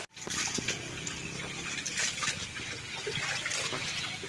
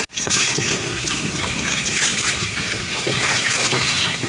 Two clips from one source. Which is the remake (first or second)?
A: second